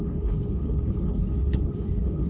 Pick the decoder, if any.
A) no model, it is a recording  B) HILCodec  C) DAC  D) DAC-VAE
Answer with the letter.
B